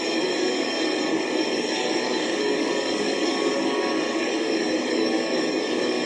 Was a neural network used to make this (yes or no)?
yes